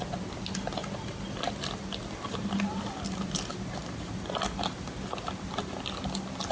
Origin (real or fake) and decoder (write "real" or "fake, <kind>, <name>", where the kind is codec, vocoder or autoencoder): real